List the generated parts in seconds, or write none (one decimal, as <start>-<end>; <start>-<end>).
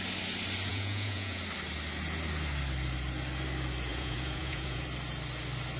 0.7-1.4; 3.9-4.8